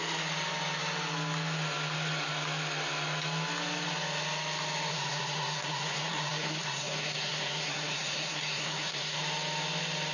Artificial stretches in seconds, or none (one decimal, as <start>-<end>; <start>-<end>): 4.9-9.2